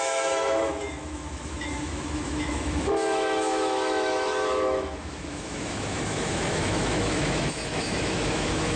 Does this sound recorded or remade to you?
remade